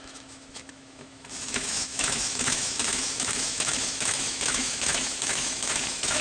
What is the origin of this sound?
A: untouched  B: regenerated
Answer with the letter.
B